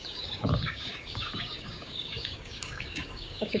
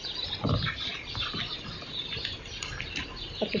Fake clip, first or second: first